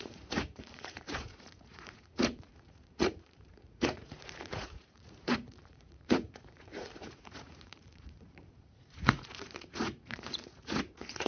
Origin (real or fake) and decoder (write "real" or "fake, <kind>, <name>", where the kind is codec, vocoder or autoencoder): fake, vocoder, Vocos